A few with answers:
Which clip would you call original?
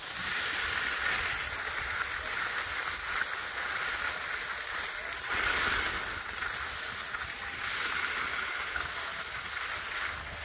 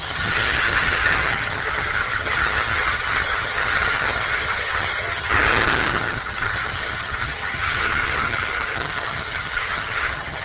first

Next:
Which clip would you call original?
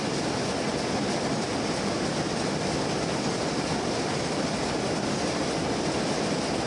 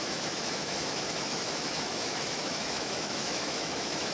first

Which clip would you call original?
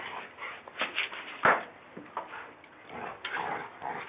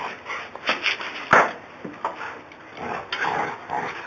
second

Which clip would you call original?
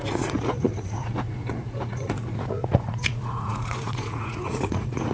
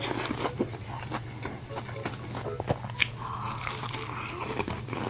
second